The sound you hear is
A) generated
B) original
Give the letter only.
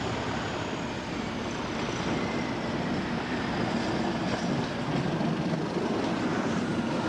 B